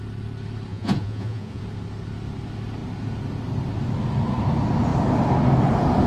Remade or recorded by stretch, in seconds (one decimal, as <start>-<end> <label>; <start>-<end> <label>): 0.0-0.7 recorded; 0.7-1.6 remade; 1.6-6.1 recorded